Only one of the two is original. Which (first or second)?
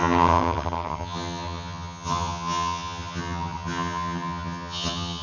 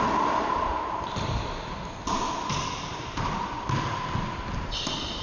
second